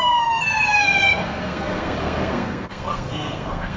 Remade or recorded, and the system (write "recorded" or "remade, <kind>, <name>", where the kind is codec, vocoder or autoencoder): remade, codec, SNAC